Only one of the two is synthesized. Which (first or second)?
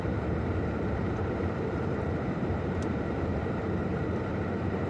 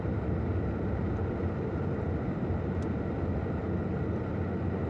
first